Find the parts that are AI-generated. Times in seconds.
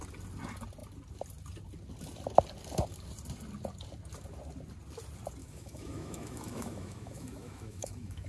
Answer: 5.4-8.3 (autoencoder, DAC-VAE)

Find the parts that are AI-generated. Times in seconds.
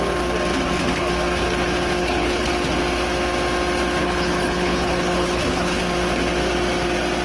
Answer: 2.0-2.5 (codec, HILCodec); 4.0-5.8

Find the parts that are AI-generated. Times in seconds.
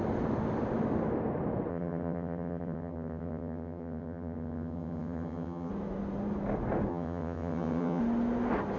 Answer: 1.7-5.7 (vocoder, HiFi-GAN); 6.9-8.0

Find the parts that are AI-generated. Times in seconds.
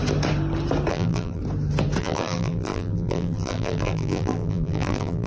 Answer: 0.9-1.4 (vocoder, BigVGAN v2); 2.0-5.3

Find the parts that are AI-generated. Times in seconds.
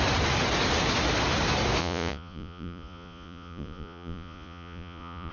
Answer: 1.8-5.3 (vocoder, Vocos)